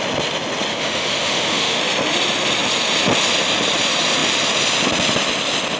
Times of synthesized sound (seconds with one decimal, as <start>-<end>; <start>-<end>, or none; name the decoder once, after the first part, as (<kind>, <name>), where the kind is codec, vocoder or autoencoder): 0.7-1.8 (autoencoder, DAC-VAE)